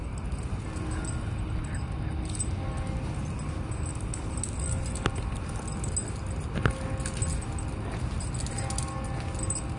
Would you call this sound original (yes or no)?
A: yes